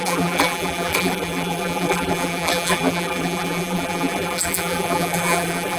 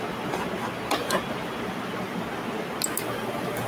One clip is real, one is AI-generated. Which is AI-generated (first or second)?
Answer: first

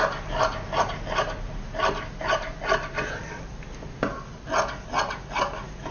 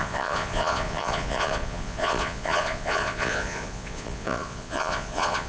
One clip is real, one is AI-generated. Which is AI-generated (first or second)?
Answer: second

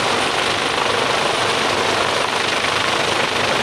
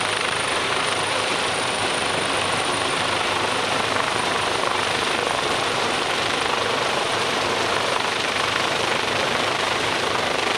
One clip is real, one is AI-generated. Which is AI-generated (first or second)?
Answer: second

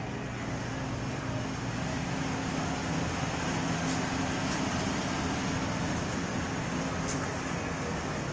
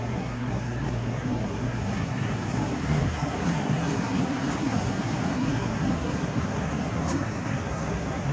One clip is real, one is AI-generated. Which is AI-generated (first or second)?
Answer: second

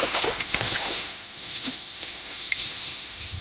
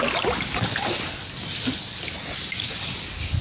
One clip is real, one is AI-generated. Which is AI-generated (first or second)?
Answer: first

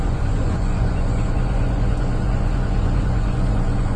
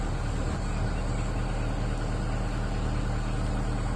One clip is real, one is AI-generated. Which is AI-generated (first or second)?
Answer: first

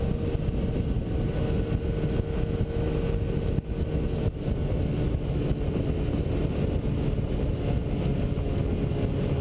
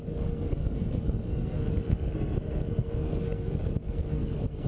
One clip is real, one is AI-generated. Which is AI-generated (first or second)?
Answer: second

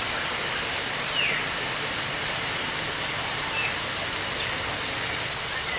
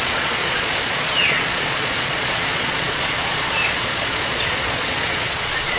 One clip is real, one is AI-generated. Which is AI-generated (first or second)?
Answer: second